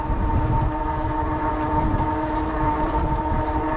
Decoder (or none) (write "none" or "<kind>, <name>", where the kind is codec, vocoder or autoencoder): none